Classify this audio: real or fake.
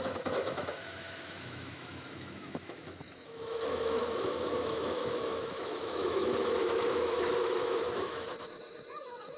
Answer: fake